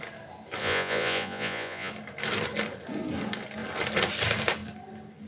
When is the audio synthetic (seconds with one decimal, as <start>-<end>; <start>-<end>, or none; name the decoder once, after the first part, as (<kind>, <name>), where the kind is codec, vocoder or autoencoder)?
0.6-1.9 (vocoder, Vocos)